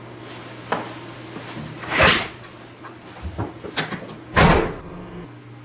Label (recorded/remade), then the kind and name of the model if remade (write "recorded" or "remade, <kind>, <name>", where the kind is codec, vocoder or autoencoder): recorded